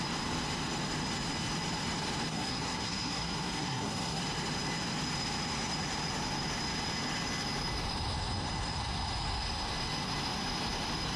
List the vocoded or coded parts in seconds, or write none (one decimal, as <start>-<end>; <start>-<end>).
2.3-4.2